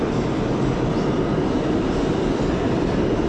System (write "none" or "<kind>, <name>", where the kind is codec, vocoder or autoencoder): none